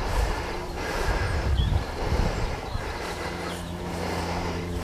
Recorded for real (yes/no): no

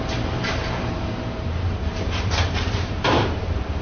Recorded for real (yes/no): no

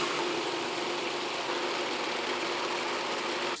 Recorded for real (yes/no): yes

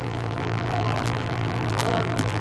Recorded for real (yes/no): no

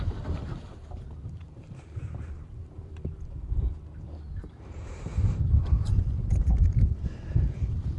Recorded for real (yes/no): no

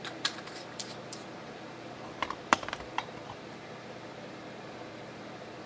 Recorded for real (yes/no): no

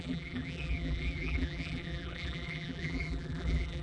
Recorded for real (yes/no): no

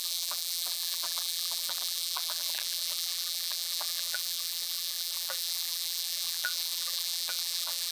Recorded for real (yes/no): no